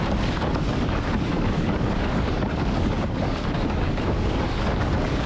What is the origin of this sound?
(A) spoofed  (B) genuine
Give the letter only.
A